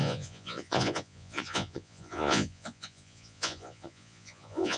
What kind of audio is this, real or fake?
fake